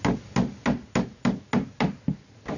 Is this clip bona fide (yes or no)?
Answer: yes